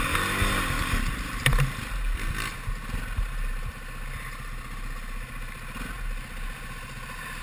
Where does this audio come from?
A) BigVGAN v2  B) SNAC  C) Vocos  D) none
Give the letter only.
D